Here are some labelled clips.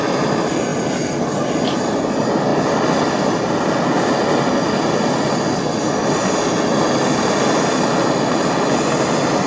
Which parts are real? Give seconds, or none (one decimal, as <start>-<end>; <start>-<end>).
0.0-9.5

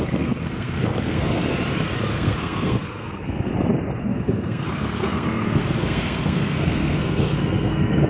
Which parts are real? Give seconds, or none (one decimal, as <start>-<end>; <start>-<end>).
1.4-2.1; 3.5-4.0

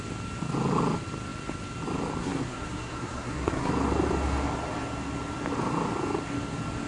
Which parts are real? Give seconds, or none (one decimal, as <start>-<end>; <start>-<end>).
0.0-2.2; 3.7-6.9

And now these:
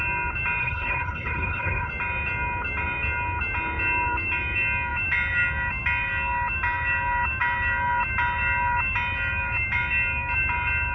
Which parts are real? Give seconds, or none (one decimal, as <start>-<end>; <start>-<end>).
0.0-0.6; 1.9-10.9